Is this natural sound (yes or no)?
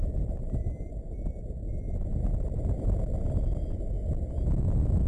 yes